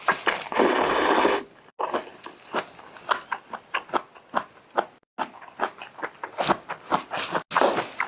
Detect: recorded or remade recorded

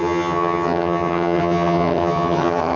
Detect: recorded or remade remade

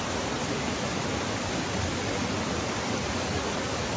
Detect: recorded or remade remade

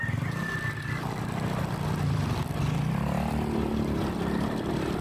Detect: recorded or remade recorded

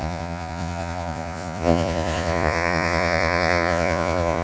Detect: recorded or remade remade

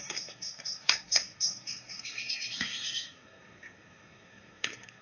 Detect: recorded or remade remade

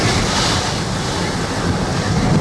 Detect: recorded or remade recorded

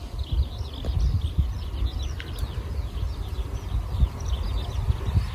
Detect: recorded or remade recorded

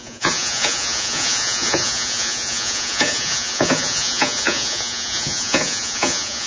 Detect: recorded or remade remade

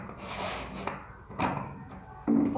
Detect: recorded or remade recorded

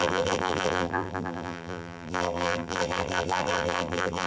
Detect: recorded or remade remade